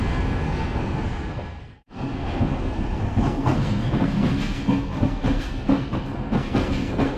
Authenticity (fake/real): fake